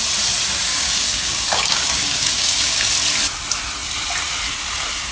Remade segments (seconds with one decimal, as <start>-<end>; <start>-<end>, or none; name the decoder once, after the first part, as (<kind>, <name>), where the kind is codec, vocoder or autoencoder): 0.7-2.9 (codec, DAC)

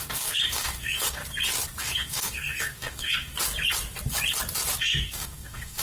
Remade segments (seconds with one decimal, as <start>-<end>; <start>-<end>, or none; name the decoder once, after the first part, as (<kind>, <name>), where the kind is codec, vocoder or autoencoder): 0.0-1.2 (codec, DAC); 1.8-3.3; 4.8-5.8

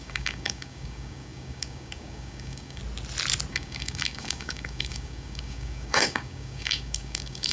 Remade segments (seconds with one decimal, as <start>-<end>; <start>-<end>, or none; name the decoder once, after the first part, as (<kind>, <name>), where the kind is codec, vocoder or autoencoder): 0.0-2.8 (codec, DAC); 3.5-7.5

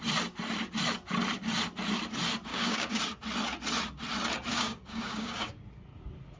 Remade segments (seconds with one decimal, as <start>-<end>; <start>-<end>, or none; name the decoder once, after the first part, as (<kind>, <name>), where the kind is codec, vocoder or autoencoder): 2.5-3.0 (codec, DAC); 4.5-5.6

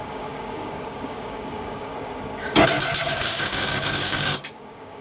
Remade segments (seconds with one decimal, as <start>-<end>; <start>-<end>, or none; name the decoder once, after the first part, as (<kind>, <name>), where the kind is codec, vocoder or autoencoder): 0.0-1.9 (codec, DAC); 3.0-5.0

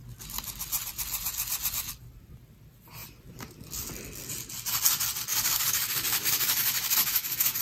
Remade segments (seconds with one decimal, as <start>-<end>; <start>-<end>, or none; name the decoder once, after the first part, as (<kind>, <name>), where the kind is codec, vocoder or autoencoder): 5.3-7.6 (codec, DAC)